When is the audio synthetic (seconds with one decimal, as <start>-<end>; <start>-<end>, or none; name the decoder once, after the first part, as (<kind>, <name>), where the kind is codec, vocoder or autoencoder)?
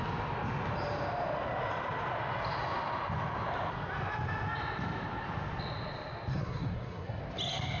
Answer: 6.3-7.2 (codec, SNAC)